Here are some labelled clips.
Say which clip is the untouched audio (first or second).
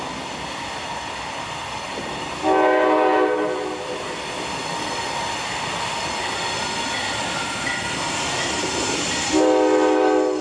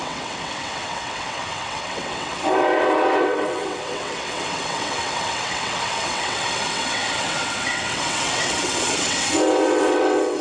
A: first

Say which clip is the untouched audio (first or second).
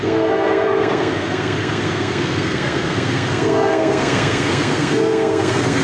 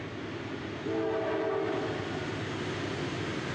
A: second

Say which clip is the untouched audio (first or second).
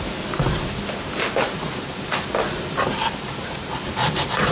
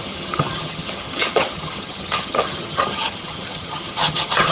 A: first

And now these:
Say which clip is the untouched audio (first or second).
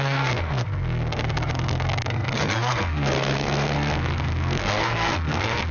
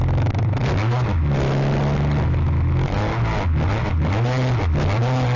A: second